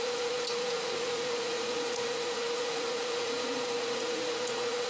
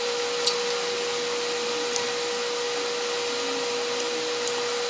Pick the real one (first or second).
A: second